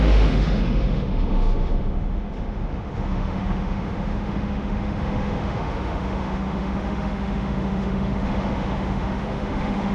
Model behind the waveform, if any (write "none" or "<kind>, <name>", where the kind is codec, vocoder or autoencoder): autoencoder, DAC-VAE